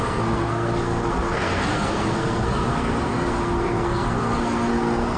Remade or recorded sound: remade